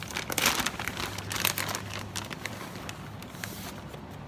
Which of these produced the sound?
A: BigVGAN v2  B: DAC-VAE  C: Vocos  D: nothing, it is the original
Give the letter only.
D